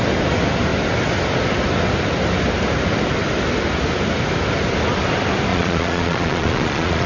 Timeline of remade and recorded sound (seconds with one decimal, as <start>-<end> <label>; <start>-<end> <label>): 0.0-5.5 recorded; 5.5-7.1 remade